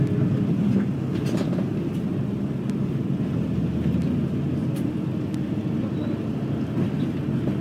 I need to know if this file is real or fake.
real